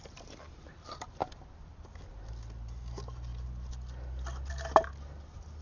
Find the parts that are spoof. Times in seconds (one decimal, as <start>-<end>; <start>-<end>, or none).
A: none